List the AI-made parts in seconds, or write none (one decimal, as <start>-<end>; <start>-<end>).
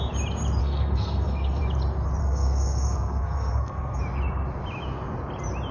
0.6-1.6; 2.2-4.0